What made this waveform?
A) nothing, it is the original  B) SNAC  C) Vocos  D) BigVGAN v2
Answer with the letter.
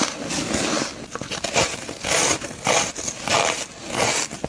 A